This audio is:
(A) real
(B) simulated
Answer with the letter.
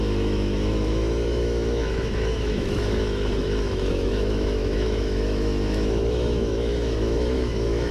B